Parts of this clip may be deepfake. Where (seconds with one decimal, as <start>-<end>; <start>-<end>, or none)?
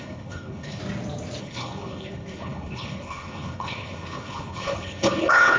0.0-0.8; 1.4-5.6